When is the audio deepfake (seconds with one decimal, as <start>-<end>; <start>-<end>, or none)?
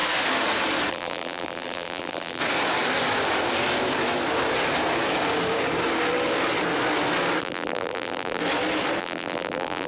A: 0.9-2.4; 7.4-8.4; 9.0-9.9